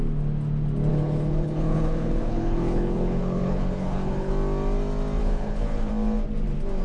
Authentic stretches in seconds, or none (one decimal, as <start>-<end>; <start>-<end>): 0.0-0.9; 4.3-5.2; 5.9-6.8

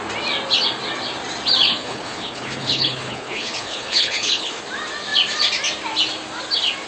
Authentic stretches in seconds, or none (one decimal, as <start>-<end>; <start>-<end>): 0.0-1.7; 4.6-6.9

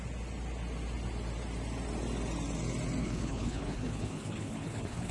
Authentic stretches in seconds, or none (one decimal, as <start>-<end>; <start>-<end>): 0.0-3.0

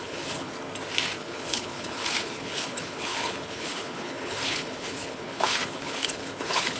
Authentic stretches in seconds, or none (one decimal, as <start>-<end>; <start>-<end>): 0.5-1.2